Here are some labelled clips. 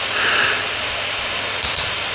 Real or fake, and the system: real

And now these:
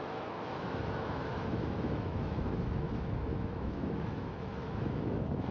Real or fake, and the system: fake, autoencoder, DAC-VAE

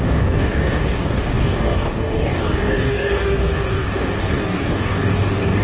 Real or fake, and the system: fake, codec, DAC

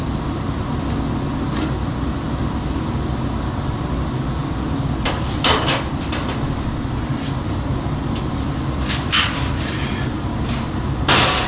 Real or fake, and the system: real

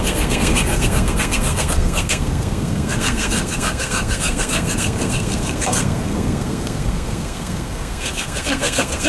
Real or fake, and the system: fake, codec, SNAC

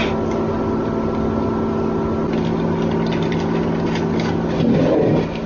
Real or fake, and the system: real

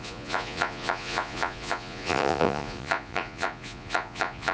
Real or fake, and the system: fake, vocoder, Vocos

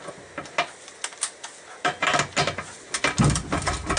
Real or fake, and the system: real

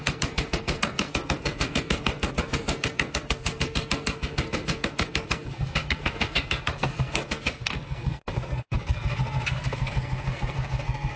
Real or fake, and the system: fake, codec, SNAC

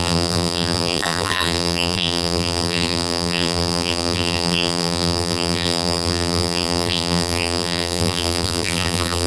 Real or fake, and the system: fake, vocoder, BigVGAN v2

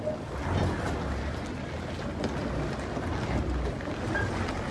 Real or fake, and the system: real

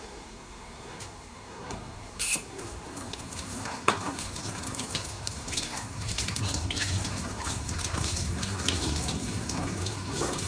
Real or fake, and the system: fake, codec, SNAC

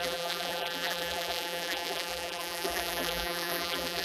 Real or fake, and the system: fake, vocoder, BigVGAN v2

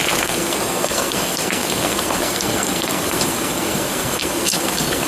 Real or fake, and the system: fake, codec, SNAC